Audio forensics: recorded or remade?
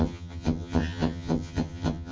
remade